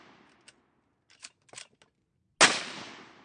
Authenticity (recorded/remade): recorded